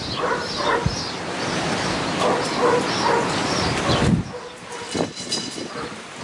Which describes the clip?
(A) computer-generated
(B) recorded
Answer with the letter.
B